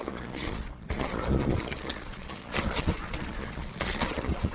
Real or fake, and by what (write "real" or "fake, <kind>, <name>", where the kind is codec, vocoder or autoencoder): fake, vocoder, Vocos